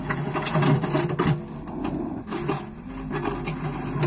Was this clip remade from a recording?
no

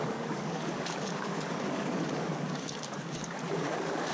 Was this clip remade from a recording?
yes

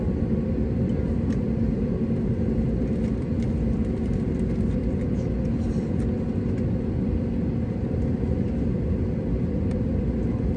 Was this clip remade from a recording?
no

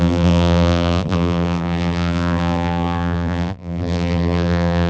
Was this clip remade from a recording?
yes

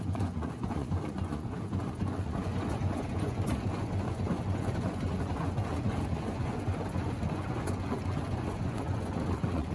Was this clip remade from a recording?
yes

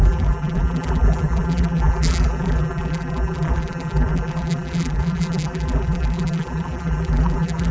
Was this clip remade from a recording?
yes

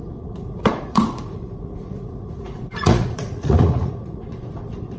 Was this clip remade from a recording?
yes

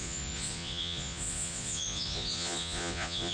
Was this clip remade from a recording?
yes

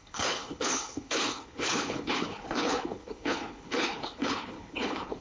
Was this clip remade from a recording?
yes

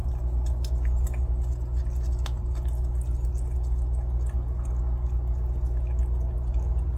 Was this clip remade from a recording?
no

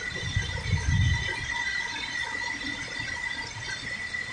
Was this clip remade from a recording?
no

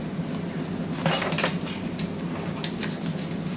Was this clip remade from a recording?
no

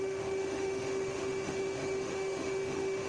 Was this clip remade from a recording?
yes